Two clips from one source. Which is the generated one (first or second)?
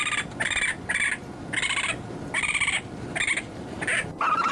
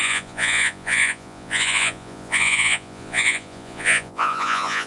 second